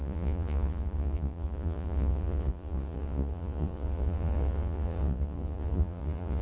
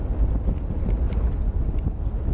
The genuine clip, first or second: second